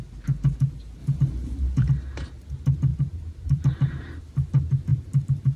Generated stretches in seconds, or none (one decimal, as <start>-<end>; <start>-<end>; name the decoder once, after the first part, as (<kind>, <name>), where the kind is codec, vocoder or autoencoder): 1.0-1.9 (vocoder, BigVGAN v2); 2.9-4.2; 4.9-5.6